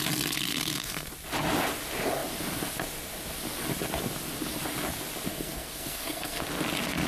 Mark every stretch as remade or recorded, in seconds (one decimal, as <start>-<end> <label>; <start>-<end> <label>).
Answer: 0.0-0.5 recorded; 0.5-1.1 remade; 1.1-5.3 recorded; 5.3-6.4 remade; 6.4-7.1 recorded